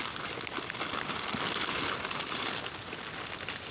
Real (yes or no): yes